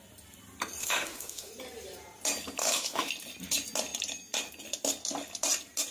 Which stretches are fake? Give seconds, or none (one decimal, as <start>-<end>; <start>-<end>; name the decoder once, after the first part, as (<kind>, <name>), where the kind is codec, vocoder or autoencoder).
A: 0.8-1.5 (autoencoder, DAC-VAE); 2.6-3.1